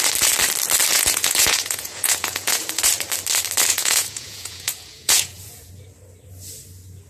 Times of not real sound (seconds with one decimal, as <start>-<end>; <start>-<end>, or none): 0.9-2.8; 3.7-5.7

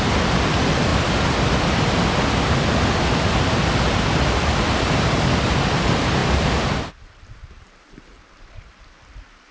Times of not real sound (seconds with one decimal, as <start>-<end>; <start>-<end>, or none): none

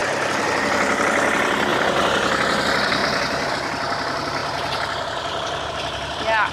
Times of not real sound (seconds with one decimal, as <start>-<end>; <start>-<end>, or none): 0.0-1.7; 2.6-3.0; 3.5-6.5